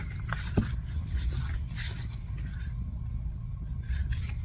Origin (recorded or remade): recorded